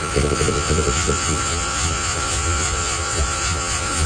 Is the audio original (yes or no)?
no